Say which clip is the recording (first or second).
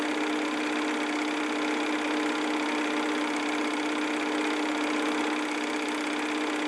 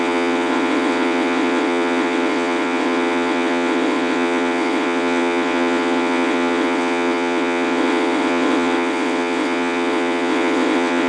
first